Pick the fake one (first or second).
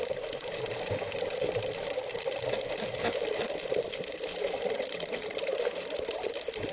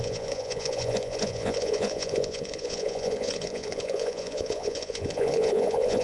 second